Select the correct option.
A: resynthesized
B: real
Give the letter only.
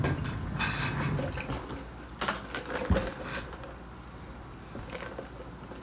B